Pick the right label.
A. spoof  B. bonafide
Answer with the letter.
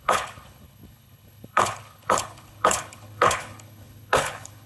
A